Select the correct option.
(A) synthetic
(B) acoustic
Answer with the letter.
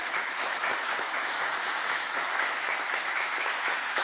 A